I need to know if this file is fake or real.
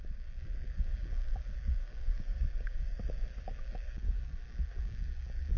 fake